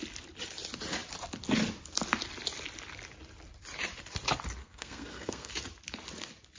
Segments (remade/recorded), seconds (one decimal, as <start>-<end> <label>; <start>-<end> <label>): 0.0-4.6 recorded; 4.6-5.5 remade; 5.5-6.6 recorded